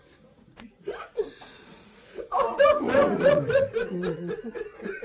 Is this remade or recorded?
remade